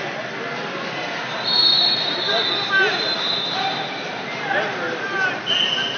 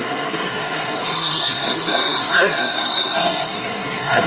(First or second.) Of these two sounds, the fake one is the second